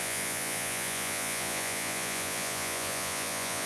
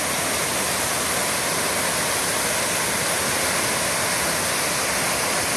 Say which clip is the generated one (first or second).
first